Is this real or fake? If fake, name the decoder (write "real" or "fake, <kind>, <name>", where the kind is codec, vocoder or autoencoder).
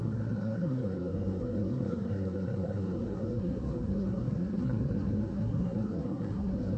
fake, codec, SNAC